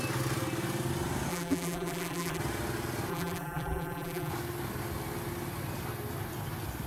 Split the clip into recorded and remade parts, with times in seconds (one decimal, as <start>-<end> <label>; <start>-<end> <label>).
0.0-1.3 recorded; 1.3-2.4 remade; 2.4-3.1 recorded; 3.1-4.3 remade; 4.3-6.9 recorded